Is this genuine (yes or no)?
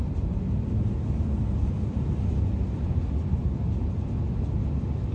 yes